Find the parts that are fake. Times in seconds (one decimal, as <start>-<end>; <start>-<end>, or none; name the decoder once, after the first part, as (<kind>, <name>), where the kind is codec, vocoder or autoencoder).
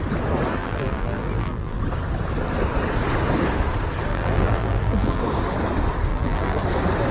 0.6-1.8 (vocoder, BigVGAN v2); 4.1-5.2; 6.1-6.6